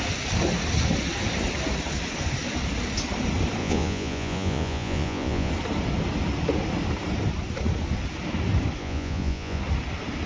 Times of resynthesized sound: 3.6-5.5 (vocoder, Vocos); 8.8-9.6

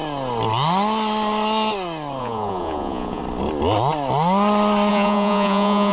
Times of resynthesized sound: 2.2-3.2 (vocoder, Vocos); 4.9-5.9

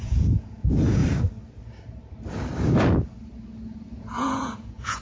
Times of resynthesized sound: 0.0-1.0 (vocoder, Vocos); 4.0-5.0

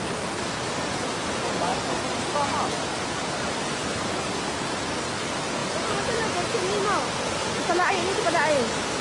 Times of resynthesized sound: none

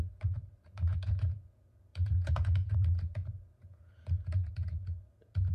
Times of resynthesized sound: 0.0-5.5 (vocoder, Vocos)